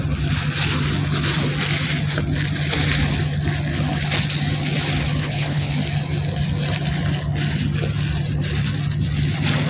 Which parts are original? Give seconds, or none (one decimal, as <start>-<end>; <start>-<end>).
0.0-5.2; 5.7-9.7